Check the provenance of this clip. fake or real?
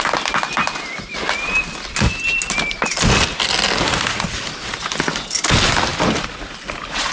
real